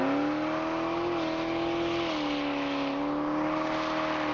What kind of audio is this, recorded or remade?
recorded